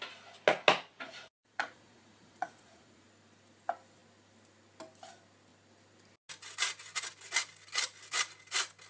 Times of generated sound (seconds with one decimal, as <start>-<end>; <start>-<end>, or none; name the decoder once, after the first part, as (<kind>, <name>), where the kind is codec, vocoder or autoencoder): 0.9-3.1 (vocoder, Vocos)